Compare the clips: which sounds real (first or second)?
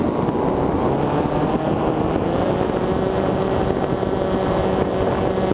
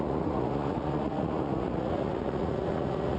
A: first